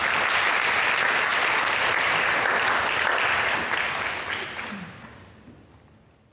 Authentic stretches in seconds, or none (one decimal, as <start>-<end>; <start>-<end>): 0.0-6.3